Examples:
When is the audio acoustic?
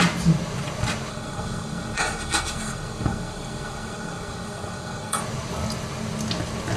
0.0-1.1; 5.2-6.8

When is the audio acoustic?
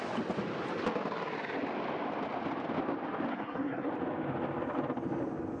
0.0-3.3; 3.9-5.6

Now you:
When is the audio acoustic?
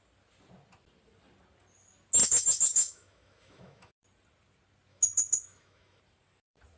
0.0-2.2; 3.9-4.9; 6.0-6.8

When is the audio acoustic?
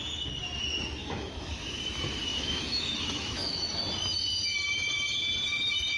0.0-1.0; 1.8-2.3; 3.7-6.0